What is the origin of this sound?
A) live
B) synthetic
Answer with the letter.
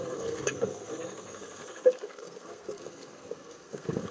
B